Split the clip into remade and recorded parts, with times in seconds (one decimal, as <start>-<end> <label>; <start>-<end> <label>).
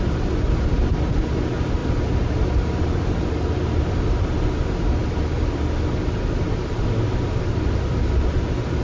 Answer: 0.0-8.8 recorded